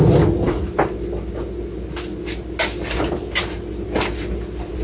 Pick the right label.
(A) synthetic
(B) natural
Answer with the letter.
B